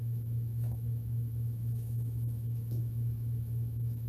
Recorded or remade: remade